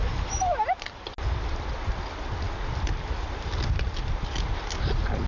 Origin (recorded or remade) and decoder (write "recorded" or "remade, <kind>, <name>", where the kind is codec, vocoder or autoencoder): recorded